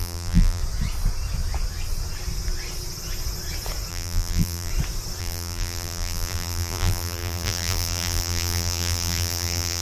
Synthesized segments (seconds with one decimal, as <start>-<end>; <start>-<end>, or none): 0.0-0.6; 3.9-4.7; 5.2-9.8

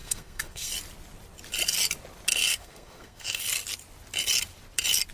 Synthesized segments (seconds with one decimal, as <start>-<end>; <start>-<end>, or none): 0.0-0.7; 2.3-3.4

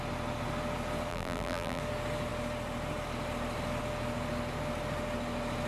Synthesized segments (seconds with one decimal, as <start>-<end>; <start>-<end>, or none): 1.1-1.8

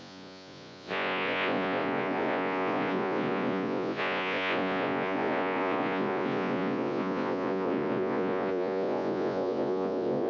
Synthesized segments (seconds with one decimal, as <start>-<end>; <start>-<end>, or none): 0.0-10.3

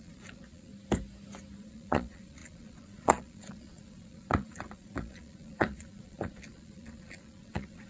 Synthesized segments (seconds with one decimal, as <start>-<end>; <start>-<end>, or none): 0.0-0.7; 1.6-7.9

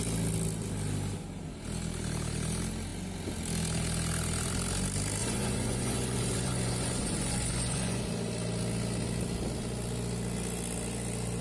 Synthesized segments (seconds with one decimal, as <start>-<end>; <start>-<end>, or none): 5.2-8.0

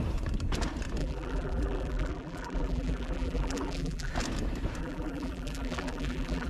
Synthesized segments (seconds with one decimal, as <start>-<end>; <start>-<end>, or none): 1.0-4.1; 4.8-6.5